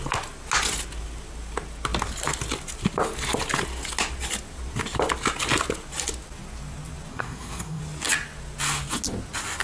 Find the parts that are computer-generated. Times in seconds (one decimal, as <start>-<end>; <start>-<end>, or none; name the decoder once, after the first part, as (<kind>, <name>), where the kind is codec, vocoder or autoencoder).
7.1-7.8 (codec, SNAC)